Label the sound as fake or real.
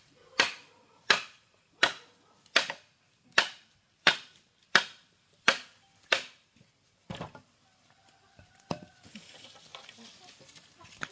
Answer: fake